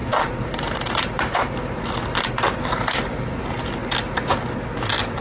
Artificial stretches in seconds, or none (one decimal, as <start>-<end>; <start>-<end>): 0.0-2.3